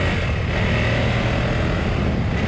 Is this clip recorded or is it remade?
recorded